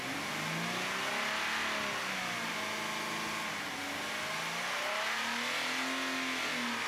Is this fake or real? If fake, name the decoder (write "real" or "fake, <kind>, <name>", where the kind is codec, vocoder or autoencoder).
real